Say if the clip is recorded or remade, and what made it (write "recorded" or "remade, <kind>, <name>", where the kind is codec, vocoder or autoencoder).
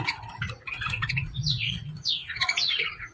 remade, vocoder, Vocos